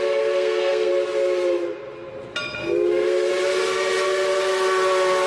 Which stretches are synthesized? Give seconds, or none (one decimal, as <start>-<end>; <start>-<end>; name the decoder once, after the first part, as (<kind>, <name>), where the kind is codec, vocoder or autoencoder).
0.0-0.9 (codec, SNAC); 2.9-3.3